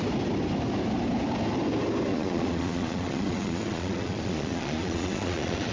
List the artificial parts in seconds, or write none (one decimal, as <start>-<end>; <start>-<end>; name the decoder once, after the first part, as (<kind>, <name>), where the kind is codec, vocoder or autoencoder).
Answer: 2.1-5.7 (vocoder, Vocos)